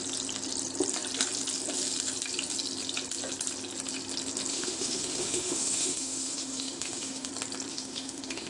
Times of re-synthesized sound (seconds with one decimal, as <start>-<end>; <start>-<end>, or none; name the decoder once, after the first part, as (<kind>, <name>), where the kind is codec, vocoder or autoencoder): 4.5-7.3 (autoencoder, DAC-VAE); 7.7-8.5